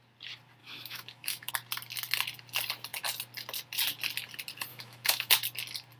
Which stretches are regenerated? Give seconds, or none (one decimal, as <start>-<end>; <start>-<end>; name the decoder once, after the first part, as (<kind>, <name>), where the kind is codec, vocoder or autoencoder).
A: 0.6-1.5 (autoencoder, DAC-VAE); 4.7-5.3